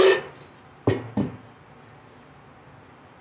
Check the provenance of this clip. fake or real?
real